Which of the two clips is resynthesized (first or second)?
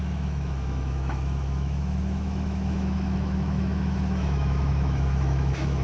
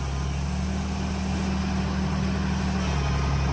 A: first